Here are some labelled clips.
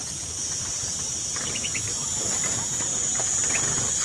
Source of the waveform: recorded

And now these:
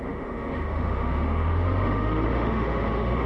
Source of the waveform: remade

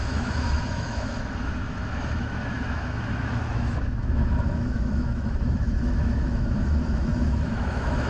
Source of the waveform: remade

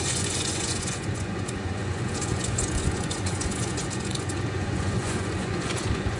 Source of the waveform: remade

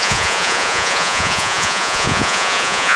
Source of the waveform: remade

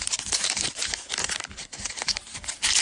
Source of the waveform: recorded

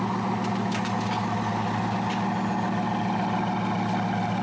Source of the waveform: recorded